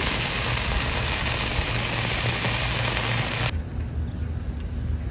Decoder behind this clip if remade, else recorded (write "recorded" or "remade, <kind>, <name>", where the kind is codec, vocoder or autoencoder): recorded